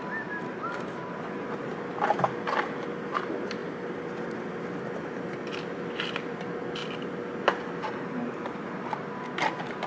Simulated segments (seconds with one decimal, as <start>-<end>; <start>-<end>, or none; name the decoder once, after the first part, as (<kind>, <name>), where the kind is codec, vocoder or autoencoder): none